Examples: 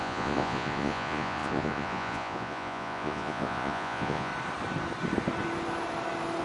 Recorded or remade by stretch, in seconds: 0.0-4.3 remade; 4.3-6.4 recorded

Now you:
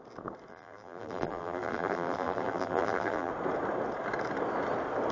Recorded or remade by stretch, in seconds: 0.0-0.5 recorded; 0.5-3.3 remade; 3.3-5.1 recorded

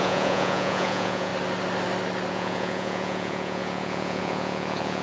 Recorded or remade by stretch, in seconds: 0.0-1.3 remade; 1.3-2.3 recorded; 2.3-5.0 remade

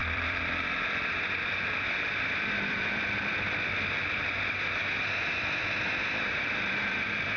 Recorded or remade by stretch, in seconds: 0.0-4.8 remade; 4.8-6.4 recorded; 6.4-7.4 remade

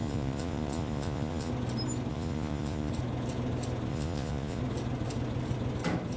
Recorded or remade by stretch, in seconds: 0.0-1.5 remade; 1.5-2.1 recorded; 2.1-2.9 remade; 2.9-3.9 recorded; 3.9-4.6 remade; 4.6-6.2 recorded